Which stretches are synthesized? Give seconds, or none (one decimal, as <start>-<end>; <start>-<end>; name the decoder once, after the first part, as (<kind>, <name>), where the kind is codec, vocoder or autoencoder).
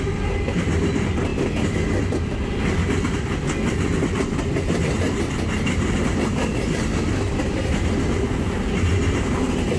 none